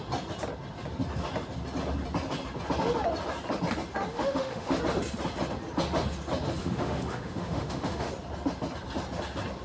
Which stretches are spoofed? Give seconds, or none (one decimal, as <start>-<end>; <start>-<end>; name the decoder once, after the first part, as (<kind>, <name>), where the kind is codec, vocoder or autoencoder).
4.1-4.8 (autoencoder, DAC-VAE); 6.6-8.1